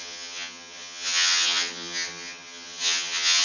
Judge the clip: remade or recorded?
remade